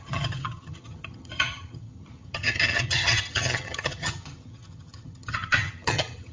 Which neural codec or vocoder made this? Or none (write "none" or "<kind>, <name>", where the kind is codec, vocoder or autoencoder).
vocoder, HiFi-GAN